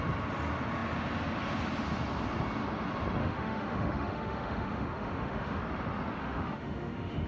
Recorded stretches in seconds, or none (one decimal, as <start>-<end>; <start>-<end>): 0.0-3.2; 5.6-6.2